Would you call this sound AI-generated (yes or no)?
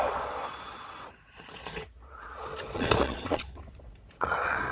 yes